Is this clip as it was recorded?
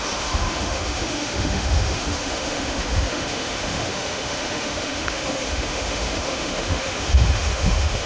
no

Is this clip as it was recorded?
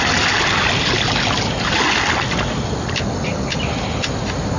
yes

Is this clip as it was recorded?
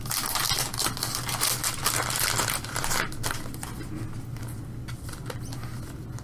yes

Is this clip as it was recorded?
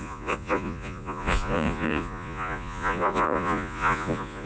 no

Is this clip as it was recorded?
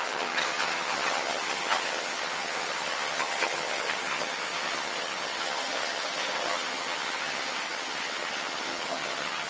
no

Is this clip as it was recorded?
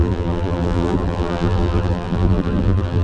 no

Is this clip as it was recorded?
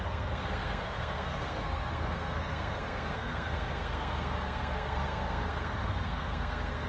no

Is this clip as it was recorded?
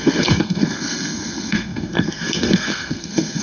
no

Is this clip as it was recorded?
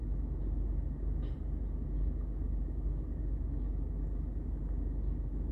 yes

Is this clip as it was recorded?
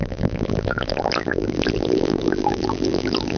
no